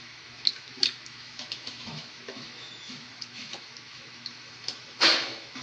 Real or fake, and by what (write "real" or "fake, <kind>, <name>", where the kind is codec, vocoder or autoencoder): fake, autoencoder, DAC-VAE